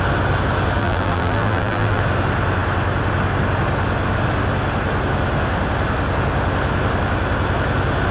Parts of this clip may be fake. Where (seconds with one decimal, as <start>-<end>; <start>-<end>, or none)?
0.8-2.0